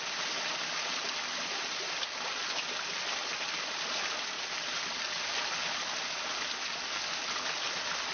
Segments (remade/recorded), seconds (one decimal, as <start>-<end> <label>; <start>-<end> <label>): 0.0-8.1 recorded

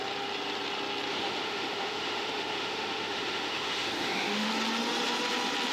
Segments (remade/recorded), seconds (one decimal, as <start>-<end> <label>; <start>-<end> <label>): 0.0-1.1 recorded; 1.1-4.5 remade; 4.5-5.7 recorded

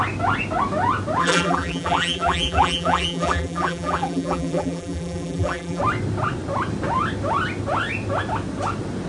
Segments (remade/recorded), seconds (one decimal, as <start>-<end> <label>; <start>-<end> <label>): 0.0-1.2 recorded; 1.2-5.8 remade; 5.8-9.1 recorded